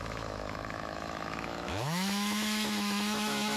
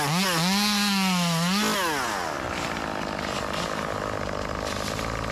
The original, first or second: second